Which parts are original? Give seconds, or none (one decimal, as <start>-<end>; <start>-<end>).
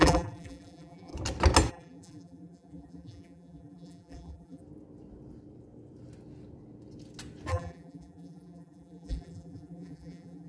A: 1.1-1.7; 4.6-7.5